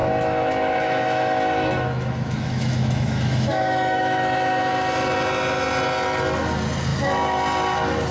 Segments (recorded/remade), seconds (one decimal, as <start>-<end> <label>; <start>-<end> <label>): 0.0-4.7 remade; 4.7-8.1 recorded